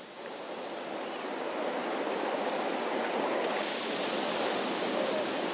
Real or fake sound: real